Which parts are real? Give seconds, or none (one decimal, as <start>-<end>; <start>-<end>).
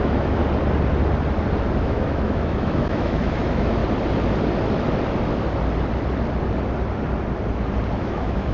0.4-1.8; 3.8-8.0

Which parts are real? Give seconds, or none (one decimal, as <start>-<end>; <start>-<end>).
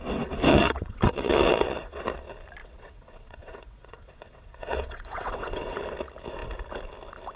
0.0-0.5; 2.0-2.6; 5.8-7.4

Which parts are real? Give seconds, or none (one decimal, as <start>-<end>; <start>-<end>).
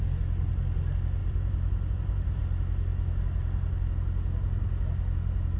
0.0-1.2; 2.4-5.6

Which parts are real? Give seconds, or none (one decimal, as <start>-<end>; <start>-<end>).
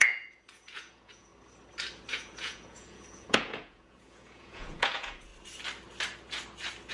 1.3-2.1; 5.3-6.9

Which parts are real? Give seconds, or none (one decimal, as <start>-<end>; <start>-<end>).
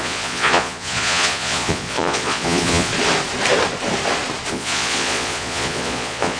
2.9-4.5